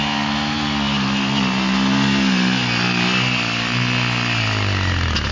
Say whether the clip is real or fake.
real